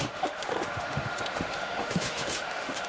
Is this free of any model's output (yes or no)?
no